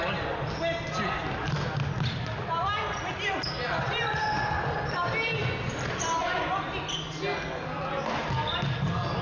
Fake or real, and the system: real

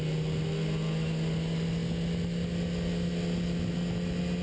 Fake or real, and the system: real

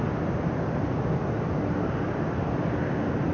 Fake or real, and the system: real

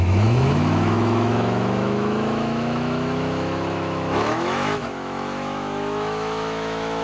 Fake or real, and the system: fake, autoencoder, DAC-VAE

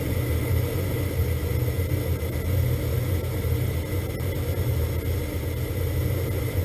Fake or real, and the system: real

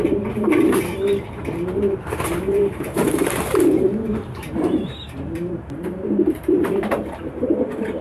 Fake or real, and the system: fake, vocoder, BigVGAN v2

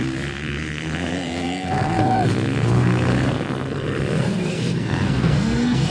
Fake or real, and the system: fake, codec, SNAC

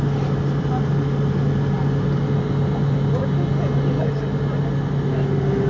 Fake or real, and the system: real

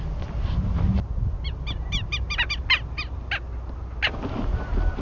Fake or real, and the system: real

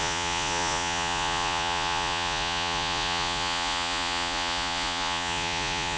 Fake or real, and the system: fake, vocoder, Vocos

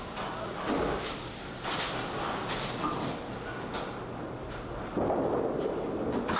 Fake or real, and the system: real